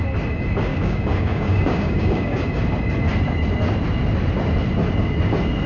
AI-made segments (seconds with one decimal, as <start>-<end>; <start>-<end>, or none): 0.7-2.6